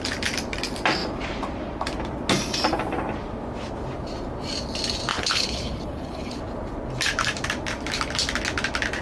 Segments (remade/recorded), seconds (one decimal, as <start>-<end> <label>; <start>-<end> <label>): 0.0-5.1 recorded; 5.1-6.4 remade; 6.4-9.0 recorded